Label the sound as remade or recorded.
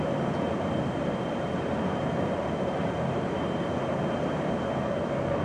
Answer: remade